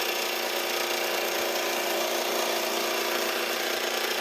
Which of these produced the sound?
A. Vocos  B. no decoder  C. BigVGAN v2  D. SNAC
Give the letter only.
B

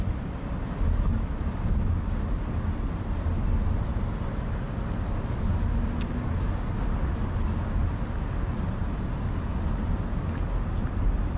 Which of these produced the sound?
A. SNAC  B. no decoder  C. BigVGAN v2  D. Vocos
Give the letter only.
B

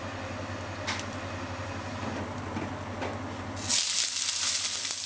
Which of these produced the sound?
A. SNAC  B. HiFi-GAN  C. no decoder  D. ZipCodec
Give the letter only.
C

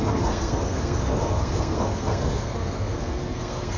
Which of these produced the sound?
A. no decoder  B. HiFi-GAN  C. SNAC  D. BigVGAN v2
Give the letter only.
C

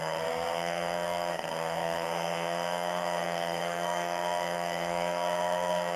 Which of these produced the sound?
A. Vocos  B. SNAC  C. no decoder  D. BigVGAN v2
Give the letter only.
B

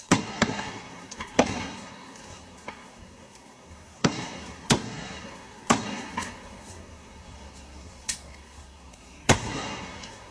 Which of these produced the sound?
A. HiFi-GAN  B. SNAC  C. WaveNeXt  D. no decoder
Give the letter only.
B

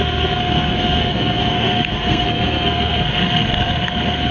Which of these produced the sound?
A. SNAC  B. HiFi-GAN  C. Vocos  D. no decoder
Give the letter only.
A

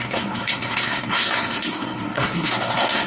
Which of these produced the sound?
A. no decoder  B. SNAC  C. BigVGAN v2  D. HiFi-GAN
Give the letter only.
B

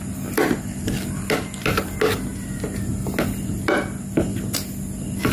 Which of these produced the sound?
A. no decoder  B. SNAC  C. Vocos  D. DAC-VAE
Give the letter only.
A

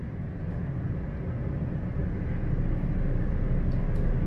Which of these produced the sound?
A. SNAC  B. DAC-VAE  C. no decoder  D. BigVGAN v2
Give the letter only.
C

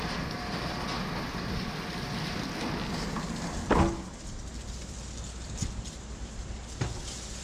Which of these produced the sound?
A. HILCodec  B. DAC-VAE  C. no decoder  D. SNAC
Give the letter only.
C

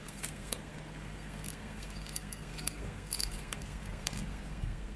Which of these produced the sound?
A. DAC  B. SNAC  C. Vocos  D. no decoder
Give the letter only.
B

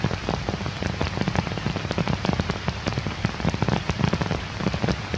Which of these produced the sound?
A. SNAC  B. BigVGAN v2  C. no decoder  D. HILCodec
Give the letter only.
C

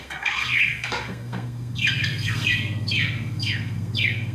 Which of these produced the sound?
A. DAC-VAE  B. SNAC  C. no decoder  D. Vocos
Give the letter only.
B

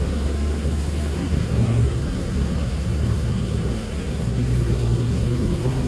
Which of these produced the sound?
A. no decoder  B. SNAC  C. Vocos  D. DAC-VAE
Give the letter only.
B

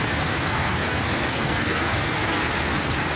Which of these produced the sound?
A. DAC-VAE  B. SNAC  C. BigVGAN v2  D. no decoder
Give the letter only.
B